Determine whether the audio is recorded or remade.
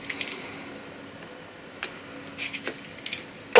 recorded